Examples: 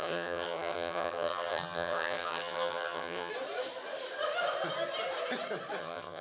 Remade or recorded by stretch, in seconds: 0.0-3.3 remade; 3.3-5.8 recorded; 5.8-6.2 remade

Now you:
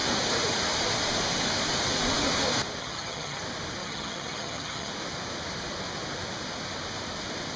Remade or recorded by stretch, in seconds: 0.0-2.8 recorded; 2.8-3.4 remade; 3.4-3.8 recorded; 3.8-4.9 remade; 4.9-7.6 recorded

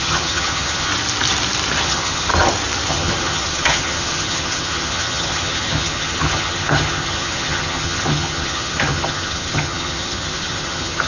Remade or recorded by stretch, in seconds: 0.0-0.9 remade; 0.9-1.8 recorded; 1.8-2.3 remade; 2.3-2.9 recorded; 2.9-11.1 remade

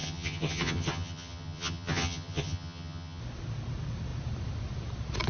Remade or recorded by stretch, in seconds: 0.0-3.2 remade; 3.2-5.3 recorded

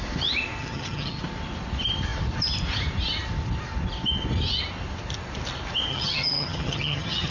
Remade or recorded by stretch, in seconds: 0.0-0.6 recorded; 0.6-1.2 remade; 1.2-5.9 recorded; 5.9-7.3 remade

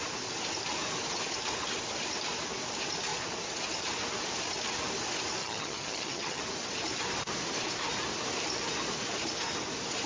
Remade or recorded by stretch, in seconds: 0.0-5.4 recorded; 5.4-6.4 remade; 6.4-10.1 recorded